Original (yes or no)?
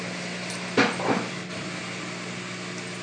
yes